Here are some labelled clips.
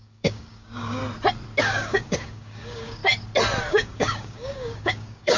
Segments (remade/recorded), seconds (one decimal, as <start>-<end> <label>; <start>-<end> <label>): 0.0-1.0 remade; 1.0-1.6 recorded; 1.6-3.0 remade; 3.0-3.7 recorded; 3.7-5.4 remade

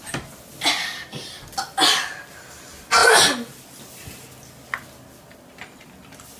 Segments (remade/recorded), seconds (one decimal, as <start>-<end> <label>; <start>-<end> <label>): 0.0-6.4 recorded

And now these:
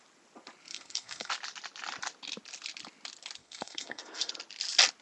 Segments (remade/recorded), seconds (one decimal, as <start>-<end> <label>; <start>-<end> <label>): 0.0-0.7 recorded; 0.7-1.3 remade; 1.3-3.4 recorded; 3.4-4.3 remade; 4.3-5.0 recorded